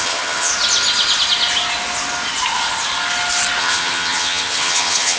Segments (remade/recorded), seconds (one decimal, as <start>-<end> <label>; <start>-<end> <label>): 0.0-0.5 remade; 0.5-3.6 recorded; 3.6-5.2 remade